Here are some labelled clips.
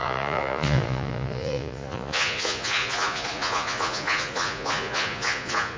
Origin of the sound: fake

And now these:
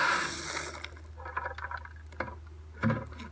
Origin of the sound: real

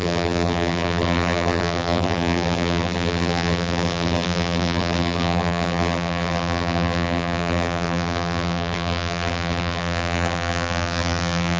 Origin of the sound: fake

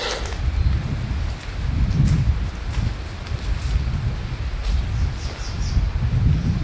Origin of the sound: real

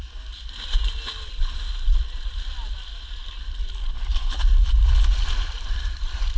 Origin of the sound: real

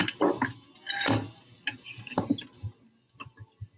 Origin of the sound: real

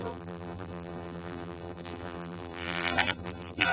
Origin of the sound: fake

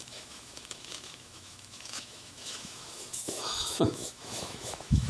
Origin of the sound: fake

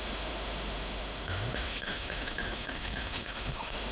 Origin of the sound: fake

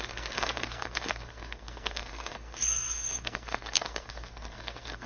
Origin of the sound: fake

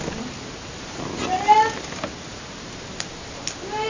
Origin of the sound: real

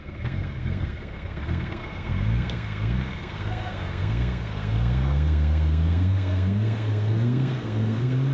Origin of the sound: fake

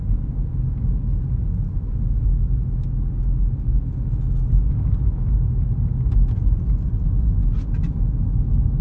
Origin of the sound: real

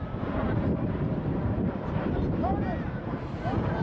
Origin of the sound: fake